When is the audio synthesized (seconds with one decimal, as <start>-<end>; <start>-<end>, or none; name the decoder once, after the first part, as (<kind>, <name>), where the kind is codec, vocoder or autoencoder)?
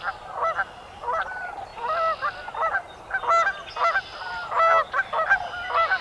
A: none